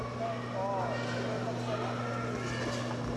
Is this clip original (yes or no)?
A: yes